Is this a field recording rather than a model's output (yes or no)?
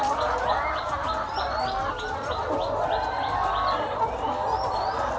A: yes